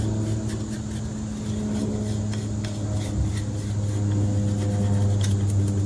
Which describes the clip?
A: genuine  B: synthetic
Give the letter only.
A